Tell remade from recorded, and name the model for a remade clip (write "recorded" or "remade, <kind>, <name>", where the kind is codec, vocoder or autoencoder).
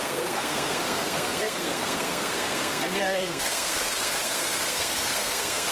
remade, codec, SNAC